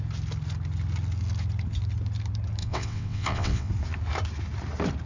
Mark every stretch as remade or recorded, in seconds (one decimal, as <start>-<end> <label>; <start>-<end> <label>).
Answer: 0.0-2.6 recorded; 2.6-3.7 remade; 3.7-5.1 recorded